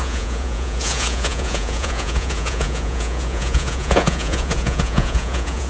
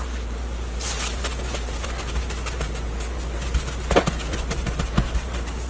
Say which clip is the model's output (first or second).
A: first